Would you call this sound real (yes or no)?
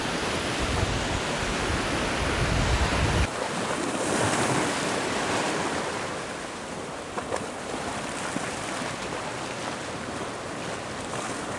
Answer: yes